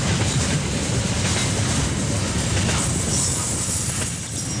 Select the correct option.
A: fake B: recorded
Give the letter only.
B